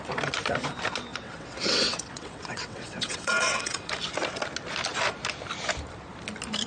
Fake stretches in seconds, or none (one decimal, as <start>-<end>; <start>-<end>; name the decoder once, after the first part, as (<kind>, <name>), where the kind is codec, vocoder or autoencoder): 1.1-3.9 (vocoder, WaveNeXt)